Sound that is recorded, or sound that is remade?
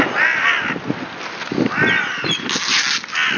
recorded